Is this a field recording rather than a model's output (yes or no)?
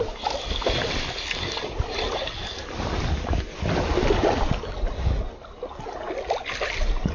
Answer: yes